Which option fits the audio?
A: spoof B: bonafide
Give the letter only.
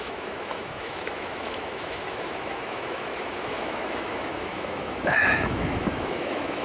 A